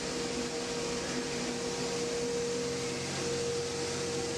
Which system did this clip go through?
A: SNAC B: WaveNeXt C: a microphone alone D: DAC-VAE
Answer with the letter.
C